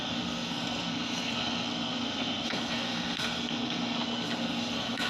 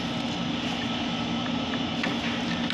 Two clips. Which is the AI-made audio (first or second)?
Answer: first